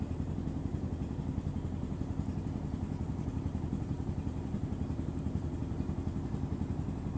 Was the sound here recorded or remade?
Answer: remade